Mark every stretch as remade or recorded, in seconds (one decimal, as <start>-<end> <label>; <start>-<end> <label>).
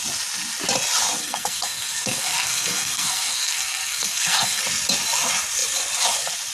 0.0-1.2 recorded; 1.2-4.6 remade; 4.6-6.5 recorded